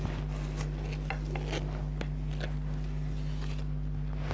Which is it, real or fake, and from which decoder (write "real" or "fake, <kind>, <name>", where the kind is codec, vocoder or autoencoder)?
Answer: real